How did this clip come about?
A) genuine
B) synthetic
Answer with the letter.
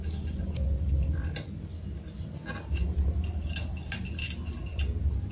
A